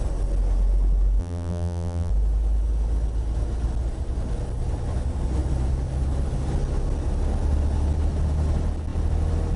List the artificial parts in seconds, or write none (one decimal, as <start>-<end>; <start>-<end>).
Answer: 1.2-2.1